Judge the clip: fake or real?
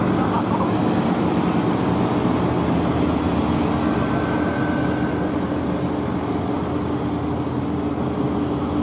real